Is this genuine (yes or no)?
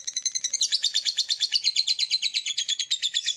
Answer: no